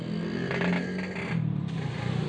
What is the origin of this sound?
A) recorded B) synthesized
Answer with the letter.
A